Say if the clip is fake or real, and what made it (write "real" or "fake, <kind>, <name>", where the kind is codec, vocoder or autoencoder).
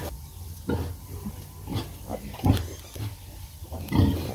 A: real